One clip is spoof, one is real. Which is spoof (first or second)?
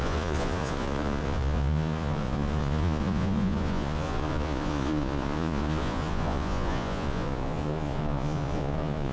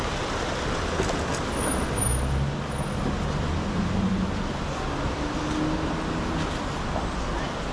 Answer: first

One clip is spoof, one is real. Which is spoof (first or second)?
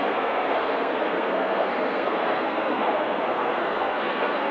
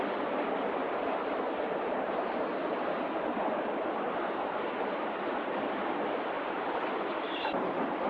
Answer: first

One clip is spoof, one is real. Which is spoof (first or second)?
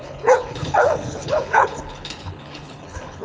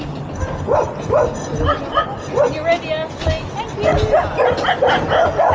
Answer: first